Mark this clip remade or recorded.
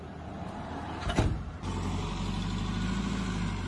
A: recorded